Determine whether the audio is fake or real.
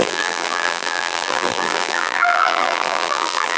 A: fake